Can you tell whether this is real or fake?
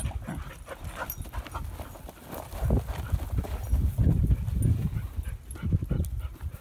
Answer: real